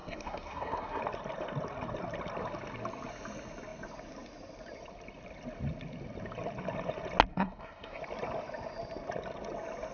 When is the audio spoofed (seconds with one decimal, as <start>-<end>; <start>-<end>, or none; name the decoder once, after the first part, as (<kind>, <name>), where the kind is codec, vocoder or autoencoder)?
0.0-1.0 (codec, SNAC); 7.3-8.0